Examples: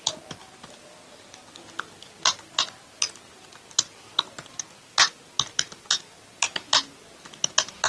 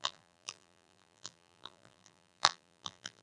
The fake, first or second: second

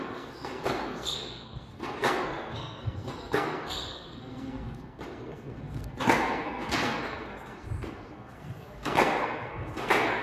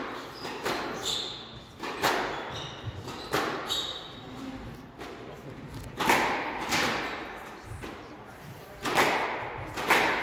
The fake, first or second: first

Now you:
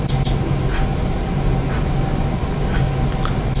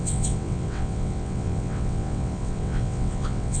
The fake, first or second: second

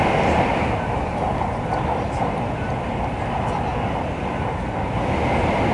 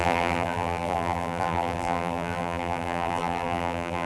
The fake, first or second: second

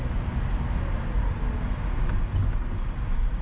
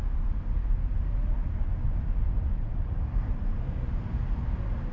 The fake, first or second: second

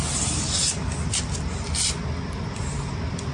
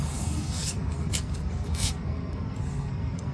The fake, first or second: second